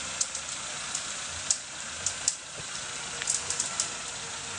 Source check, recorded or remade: recorded